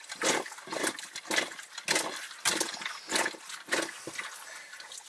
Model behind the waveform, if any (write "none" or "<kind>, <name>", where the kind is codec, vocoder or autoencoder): none